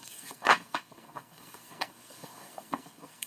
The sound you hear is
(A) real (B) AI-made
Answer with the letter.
B